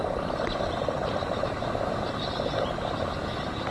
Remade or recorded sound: recorded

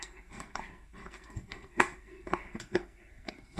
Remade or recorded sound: remade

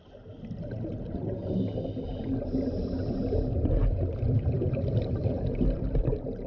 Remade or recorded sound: recorded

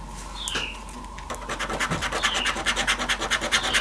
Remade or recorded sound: recorded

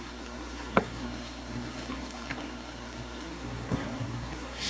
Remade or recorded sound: remade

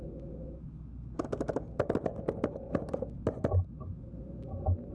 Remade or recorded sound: recorded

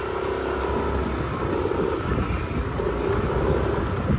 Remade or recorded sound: recorded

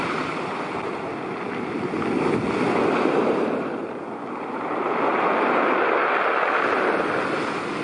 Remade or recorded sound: recorded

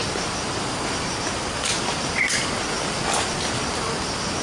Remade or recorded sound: recorded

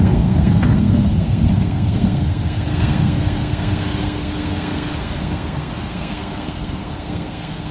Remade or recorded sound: remade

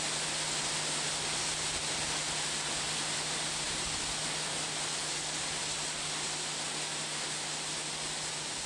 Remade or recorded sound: recorded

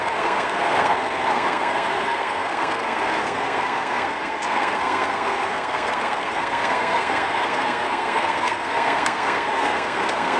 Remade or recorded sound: remade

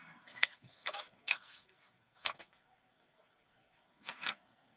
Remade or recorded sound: remade